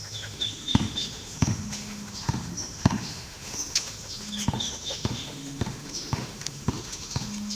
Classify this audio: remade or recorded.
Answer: remade